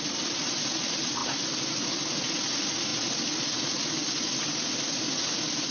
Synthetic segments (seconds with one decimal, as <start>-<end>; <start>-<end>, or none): none